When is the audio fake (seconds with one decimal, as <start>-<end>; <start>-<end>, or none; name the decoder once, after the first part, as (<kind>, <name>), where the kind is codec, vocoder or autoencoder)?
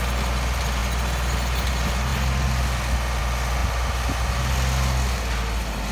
none